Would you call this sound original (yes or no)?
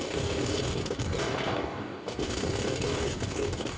no